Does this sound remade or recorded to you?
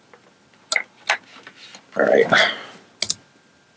recorded